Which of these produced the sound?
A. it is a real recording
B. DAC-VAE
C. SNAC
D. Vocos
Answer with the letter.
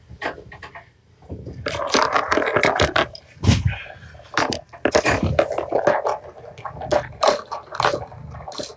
A